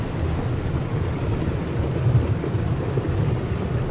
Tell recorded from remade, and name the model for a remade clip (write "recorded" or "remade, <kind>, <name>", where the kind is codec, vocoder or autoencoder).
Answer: recorded